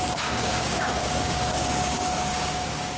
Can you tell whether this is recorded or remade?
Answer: remade